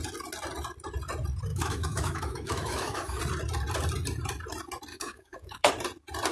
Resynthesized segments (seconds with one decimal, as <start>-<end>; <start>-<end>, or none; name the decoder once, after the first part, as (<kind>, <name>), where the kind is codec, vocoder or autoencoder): 1.5-3.2 (autoencoder, DAC-VAE); 4.9-5.7